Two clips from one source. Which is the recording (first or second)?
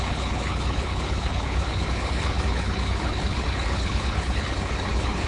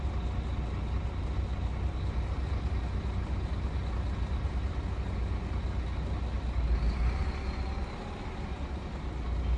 second